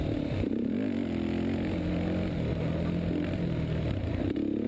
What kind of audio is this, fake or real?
real